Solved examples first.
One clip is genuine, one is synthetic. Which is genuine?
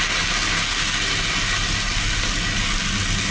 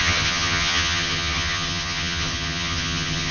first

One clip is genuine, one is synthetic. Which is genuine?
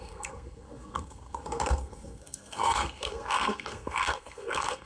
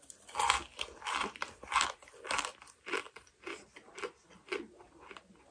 second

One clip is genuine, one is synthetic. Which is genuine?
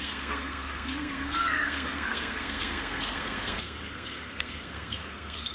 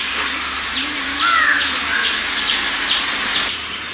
second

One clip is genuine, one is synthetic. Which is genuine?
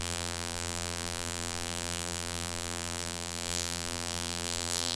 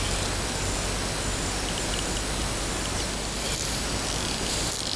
second